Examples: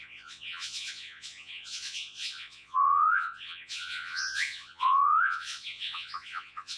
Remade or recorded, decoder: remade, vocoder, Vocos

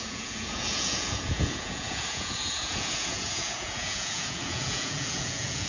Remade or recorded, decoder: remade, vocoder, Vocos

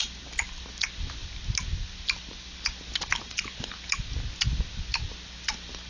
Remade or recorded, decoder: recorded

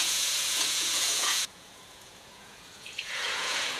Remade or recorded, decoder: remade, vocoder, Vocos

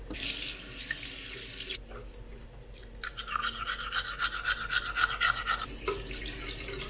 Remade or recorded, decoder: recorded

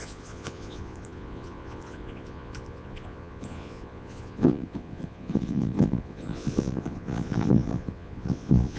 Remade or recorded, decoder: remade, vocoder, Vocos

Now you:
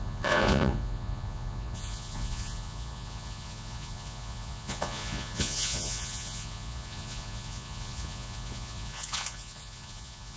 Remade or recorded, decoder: remade, vocoder, Vocos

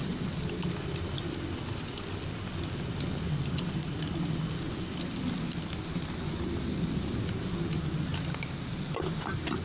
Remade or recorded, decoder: recorded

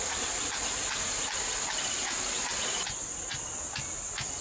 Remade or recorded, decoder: recorded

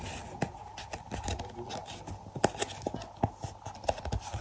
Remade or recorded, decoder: recorded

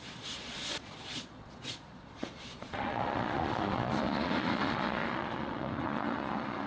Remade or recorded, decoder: remade, vocoder, Vocos